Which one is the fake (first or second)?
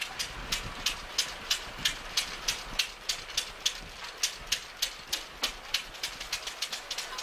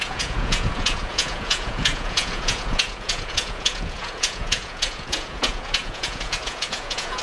second